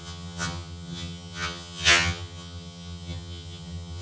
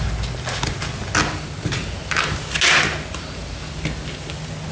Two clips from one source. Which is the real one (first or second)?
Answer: second